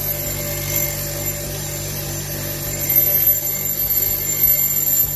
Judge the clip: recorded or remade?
recorded